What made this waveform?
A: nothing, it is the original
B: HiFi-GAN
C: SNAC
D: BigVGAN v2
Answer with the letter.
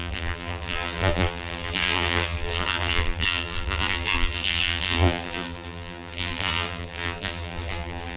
D